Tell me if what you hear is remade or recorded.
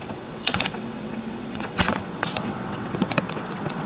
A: remade